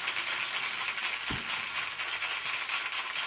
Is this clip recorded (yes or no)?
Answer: yes